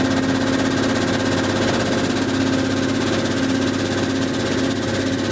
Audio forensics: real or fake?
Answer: real